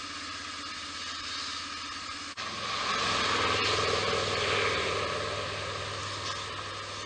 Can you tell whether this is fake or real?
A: real